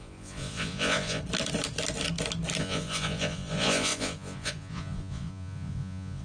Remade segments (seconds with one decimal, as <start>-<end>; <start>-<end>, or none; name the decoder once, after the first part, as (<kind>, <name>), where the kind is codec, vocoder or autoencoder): 0.0-1.2 (vocoder, Vocos); 2.6-6.2